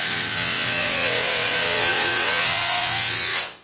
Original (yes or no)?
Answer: no